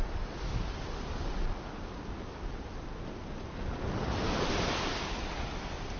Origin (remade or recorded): recorded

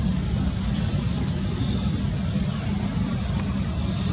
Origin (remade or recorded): recorded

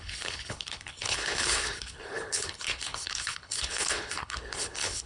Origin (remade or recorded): remade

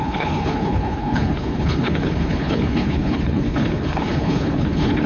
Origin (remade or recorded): remade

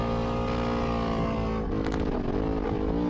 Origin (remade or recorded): recorded